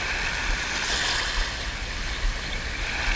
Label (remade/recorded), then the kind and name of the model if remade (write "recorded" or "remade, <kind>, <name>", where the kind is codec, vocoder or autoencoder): recorded